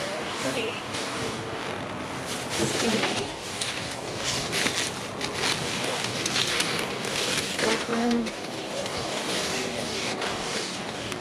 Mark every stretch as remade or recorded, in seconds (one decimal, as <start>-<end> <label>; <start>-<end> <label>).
0.0-1.8 remade; 1.8-2.9 recorded; 2.9-4.6 remade; 4.6-5.6 recorded; 5.6-11.2 remade